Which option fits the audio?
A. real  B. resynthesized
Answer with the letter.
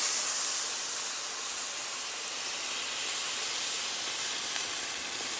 A